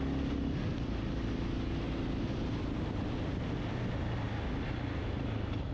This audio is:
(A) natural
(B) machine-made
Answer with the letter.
A